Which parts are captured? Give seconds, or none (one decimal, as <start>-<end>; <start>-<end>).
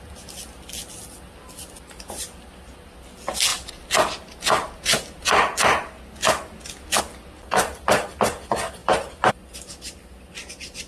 0.0-10.9